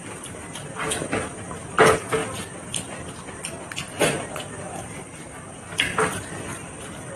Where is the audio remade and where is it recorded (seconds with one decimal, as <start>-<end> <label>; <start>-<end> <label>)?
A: 0.0-7.2 recorded